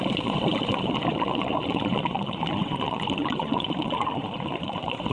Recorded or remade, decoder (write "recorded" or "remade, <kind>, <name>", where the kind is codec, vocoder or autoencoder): remade, vocoder, Vocos